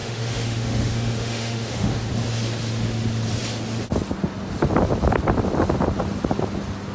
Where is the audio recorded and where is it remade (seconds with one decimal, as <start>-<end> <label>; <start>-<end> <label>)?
0.0-2.1 remade; 2.1-6.9 recorded